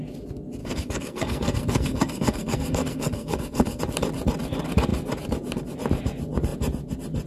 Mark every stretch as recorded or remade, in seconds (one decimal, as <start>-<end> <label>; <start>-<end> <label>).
0.0-0.6 recorded; 0.6-3.8 remade; 3.8-7.3 recorded

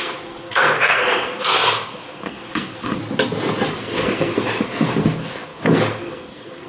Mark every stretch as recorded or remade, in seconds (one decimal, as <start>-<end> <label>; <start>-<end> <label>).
0.0-3.0 remade; 3.0-3.7 recorded; 3.7-6.7 remade

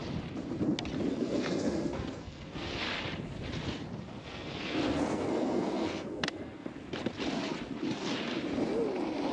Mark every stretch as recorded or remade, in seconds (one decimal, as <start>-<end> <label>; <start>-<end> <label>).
0.0-1.1 recorded; 1.1-2.7 remade; 2.7-4.2 recorded; 4.2-6.7 remade; 6.7-9.3 recorded

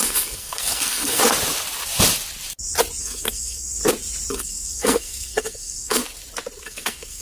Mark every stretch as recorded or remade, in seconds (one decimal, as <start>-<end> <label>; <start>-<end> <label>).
0.0-1.2 remade; 1.2-3.0 recorded; 3.0-3.8 remade; 3.8-4.3 recorded; 4.3-6.0 remade; 6.0-6.6 recorded; 6.6-7.2 remade

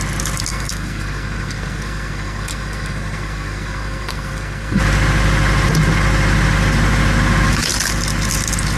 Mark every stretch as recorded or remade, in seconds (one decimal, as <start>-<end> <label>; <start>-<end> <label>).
0.0-0.5 recorded; 0.5-4.8 remade; 4.8-8.8 recorded